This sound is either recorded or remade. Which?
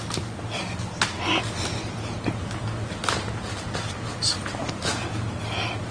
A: recorded